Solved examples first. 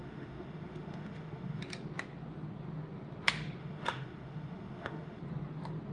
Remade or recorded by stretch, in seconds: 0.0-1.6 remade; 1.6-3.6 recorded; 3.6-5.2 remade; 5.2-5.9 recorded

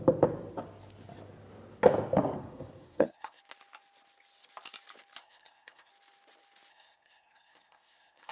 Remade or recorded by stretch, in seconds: 0.0-2.4 recorded; 2.4-3.4 remade; 3.4-5.2 recorded; 5.2-5.9 remade; 5.9-6.7 recorded; 6.7-8.3 remade

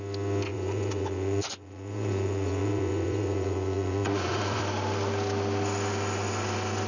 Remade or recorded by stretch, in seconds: 0.0-0.5 recorded; 0.5-4.6 remade; 4.6-6.9 recorded